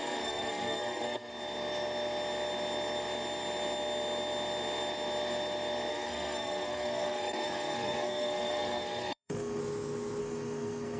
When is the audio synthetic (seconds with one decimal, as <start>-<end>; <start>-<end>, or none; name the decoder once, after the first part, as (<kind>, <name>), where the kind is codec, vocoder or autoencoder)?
0.0-1.3 (codec, SNAC); 5.9-9.6; 10.2-11.0